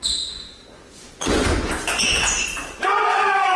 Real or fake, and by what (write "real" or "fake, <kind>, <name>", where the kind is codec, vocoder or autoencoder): fake, vocoder, Vocos